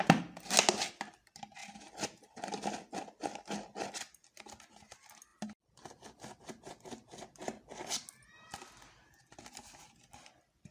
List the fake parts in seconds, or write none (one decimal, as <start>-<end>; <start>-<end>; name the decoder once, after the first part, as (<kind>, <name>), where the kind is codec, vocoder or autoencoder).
none

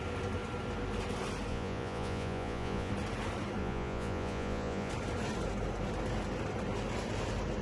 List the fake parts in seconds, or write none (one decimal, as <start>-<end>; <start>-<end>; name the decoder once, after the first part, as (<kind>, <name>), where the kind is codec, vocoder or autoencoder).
1.5-2.9 (vocoder, Vocos); 3.6-4.9

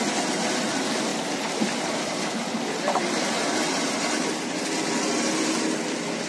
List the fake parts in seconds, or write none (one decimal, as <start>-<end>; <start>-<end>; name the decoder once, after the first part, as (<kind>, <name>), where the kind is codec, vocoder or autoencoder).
none

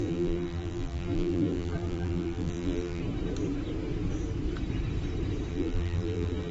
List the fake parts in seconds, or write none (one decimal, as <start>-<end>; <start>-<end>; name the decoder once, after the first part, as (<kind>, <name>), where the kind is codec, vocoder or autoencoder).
0.0-3.0 (vocoder, BigVGAN v2); 5.5-6.5

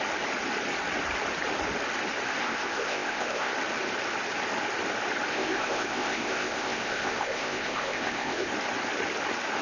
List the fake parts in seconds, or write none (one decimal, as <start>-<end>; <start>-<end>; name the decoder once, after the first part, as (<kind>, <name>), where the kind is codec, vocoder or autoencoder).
2.4-3.5 (codec, ZipCodec); 5.3-8.5

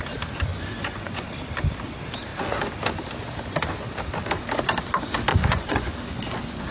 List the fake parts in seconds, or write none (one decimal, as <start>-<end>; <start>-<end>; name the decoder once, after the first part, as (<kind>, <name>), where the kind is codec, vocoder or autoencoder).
0.5-1.3 (vocoder, Vocos); 5.3-6.7

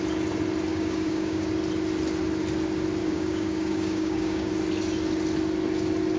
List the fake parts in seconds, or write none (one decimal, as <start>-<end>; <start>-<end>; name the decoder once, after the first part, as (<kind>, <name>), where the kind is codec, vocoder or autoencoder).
0.7-1.5 (codec, DAC); 3.0-4.5